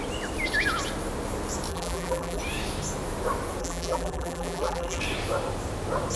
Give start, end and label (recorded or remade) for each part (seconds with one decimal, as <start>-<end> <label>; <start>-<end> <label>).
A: 0.0-1.7 recorded; 1.7-2.4 remade; 2.4-3.6 recorded; 3.6-5.0 remade; 5.0-6.2 recorded